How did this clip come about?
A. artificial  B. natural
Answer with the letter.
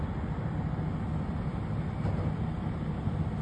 B